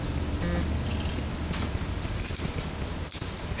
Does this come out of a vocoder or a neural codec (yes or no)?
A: no